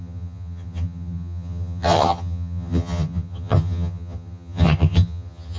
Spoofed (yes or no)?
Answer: yes